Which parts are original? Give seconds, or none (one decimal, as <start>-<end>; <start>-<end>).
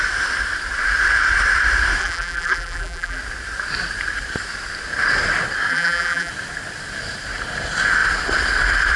0.0-2.0; 3.2-5.7; 6.3-9.0